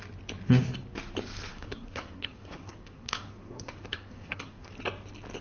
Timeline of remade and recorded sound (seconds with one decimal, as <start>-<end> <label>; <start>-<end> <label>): 0.0-1.5 recorded; 1.5-4.7 remade; 4.7-5.4 recorded